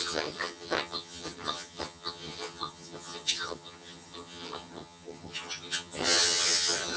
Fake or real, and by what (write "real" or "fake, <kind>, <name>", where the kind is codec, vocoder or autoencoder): fake, vocoder, HiFi-GAN